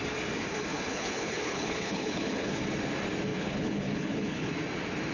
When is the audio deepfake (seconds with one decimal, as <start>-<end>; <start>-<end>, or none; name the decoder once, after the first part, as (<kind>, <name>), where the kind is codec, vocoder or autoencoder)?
0.7-2.6 (codec, HILCodec); 3.3-4.5